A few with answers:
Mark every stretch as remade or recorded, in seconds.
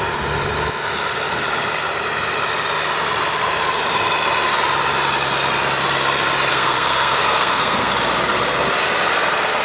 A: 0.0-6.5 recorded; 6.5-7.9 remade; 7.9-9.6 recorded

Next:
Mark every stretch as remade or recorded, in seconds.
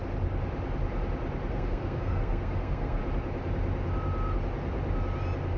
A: 0.0-1.5 recorded; 1.5-3.0 remade; 3.0-5.6 recorded